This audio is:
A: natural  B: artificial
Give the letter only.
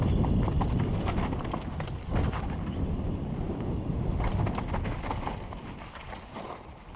A